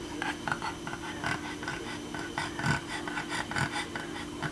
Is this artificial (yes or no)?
no